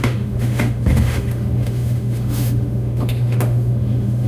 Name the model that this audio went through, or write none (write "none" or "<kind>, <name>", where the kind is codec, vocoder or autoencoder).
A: autoencoder, DAC-VAE